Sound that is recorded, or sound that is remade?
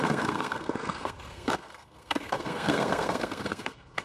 remade